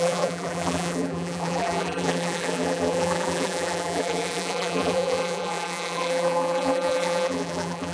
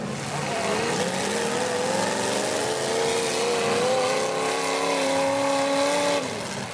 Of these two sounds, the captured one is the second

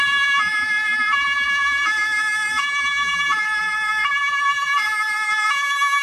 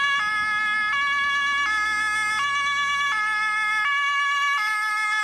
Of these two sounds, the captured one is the second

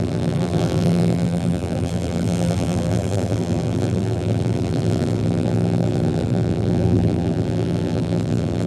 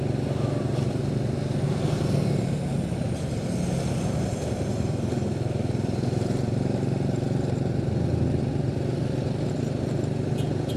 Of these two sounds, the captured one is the second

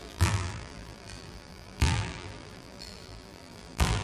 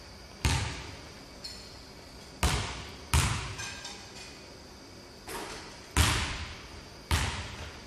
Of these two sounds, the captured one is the second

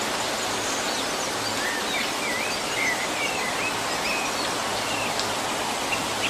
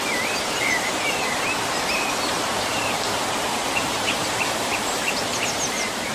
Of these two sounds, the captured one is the first